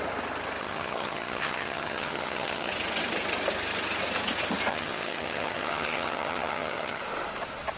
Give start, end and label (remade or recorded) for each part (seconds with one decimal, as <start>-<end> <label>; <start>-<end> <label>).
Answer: 0.0-0.6 recorded; 0.6-2.7 remade; 2.7-4.7 recorded; 4.7-7.0 remade; 7.0-7.8 recorded

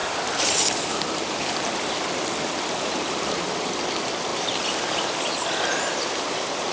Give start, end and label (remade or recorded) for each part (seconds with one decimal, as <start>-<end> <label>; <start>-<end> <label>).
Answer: 0.0-6.7 recorded

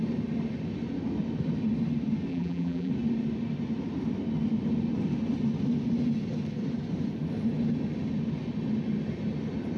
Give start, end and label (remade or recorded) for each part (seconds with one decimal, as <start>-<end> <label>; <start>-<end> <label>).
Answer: 0.0-2.3 recorded; 2.3-2.9 remade; 2.9-9.8 recorded

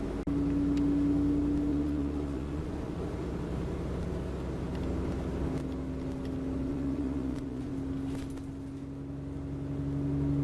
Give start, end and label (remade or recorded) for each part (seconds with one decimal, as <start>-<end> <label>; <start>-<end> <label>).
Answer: 0.0-1.7 recorded; 1.7-3.0 remade; 3.0-6.7 recorded; 6.7-7.7 remade; 7.7-10.4 recorded

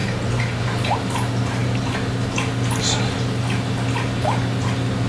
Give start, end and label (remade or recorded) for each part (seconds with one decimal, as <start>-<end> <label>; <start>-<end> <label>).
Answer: 0.0-5.1 recorded